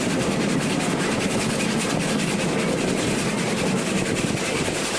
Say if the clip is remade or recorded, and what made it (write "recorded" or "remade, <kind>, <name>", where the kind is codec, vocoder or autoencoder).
recorded